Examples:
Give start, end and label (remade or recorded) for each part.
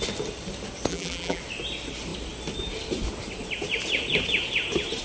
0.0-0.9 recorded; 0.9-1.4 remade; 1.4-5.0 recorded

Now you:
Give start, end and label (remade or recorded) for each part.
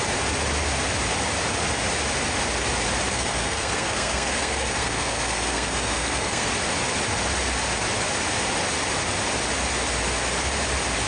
0.0-3.1 recorded; 3.1-6.5 remade; 6.5-11.1 recorded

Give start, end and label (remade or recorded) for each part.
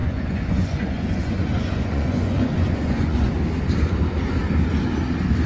0.0-3.3 remade; 3.3-5.5 recorded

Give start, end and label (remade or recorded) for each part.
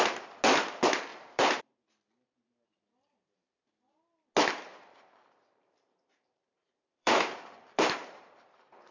0.0-1.1 recorded; 1.1-1.6 remade; 1.6-4.7 recorded; 4.7-8.9 remade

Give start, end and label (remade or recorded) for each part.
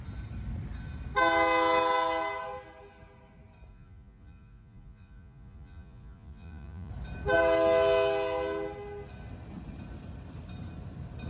0.0-3.7 recorded; 3.7-6.9 remade; 6.9-11.3 recorded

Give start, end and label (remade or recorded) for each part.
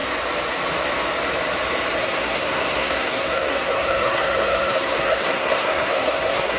0.0-2.0 recorded; 2.0-6.6 remade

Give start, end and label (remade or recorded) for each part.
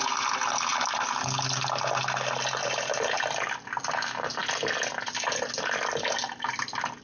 0.0-2.6 recorded; 2.6-3.4 remade; 3.4-6.2 recorded; 6.2-7.0 remade